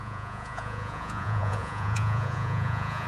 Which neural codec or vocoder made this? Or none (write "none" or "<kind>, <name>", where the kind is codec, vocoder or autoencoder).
vocoder, Vocos